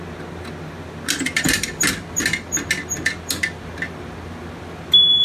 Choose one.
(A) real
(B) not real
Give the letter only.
A